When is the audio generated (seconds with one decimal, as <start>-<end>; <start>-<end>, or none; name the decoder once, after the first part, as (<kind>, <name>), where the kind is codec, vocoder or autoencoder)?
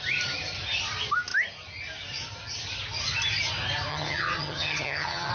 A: 3.9-5.3 (vocoder, HiFi-GAN)